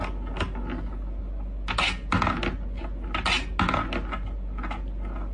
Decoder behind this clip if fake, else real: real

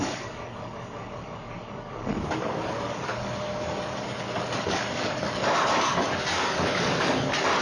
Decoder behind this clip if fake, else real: fake, codec, DAC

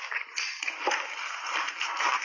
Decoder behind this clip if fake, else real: real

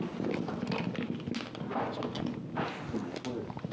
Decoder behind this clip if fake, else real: real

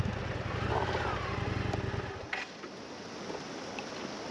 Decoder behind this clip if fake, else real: real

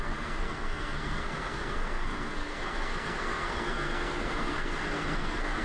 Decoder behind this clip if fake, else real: fake, codec, SNAC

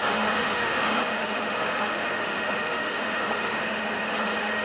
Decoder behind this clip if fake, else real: fake, autoencoder, DAC-VAE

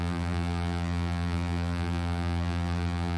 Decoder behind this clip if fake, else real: fake, vocoder, BigVGAN v2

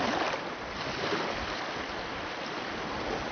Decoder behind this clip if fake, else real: real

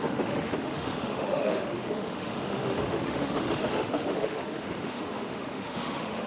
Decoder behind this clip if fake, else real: fake, autoencoder, DAC-VAE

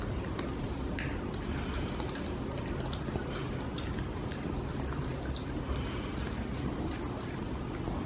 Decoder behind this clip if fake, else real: real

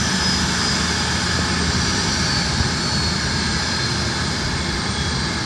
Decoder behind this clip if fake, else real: real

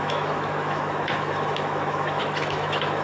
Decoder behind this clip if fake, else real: fake, autoencoder, DAC-VAE